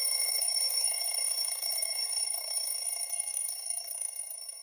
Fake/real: fake